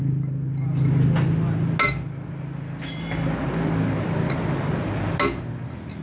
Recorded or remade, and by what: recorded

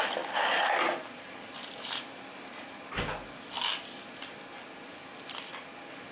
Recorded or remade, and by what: recorded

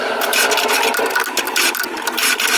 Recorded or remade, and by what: recorded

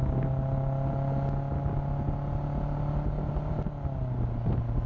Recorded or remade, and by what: recorded